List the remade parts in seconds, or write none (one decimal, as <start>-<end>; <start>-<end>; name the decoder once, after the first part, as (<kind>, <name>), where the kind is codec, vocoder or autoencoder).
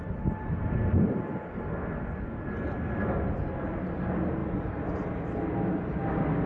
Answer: none